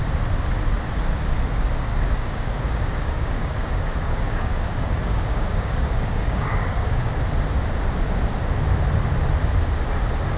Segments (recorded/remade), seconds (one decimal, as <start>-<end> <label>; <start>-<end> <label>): 0.0-1.9 recorded; 1.9-7.1 remade; 7.1-10.4 recorded